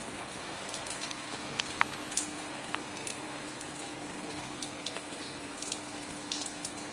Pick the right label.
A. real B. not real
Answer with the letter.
B